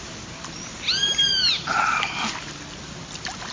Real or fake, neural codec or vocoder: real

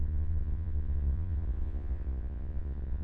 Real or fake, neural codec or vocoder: fake, vocoder, Vocos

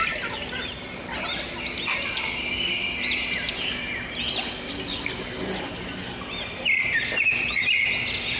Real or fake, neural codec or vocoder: real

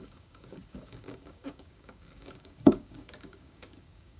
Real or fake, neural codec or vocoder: fake, codec, DAC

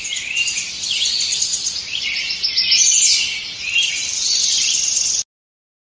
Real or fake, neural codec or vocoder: real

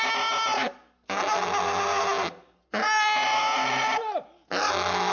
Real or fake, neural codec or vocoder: real